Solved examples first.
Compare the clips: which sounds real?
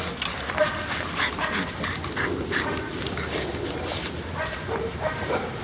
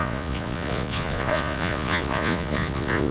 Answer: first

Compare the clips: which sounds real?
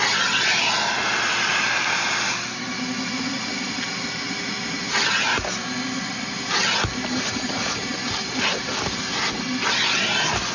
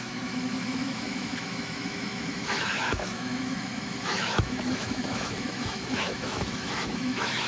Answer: first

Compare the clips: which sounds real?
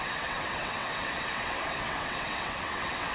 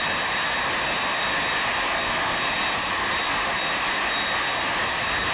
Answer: second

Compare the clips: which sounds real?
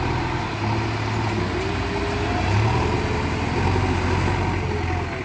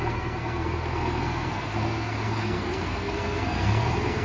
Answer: first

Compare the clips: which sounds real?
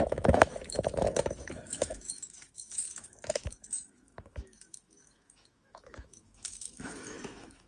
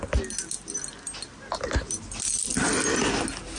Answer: second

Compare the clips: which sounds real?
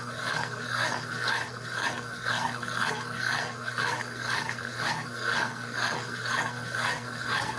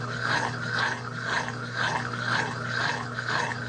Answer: second